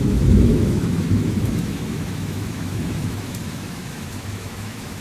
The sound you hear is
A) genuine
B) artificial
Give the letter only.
B